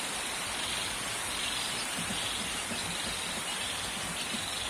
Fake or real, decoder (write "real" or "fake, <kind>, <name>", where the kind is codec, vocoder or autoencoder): real